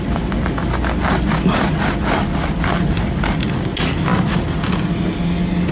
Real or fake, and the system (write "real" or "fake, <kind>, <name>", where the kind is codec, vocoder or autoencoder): real